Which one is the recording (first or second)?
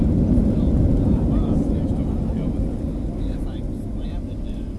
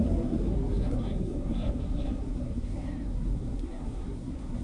first